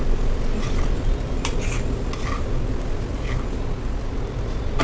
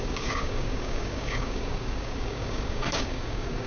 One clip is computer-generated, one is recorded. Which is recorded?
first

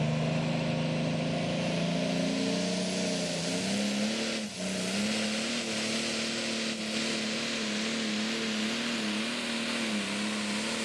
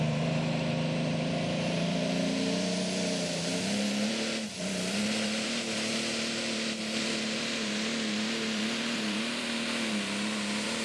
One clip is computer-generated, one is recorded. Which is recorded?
first